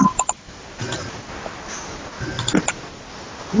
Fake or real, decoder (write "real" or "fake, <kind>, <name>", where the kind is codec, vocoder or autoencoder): real